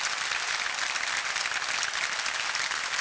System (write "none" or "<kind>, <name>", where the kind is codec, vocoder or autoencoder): none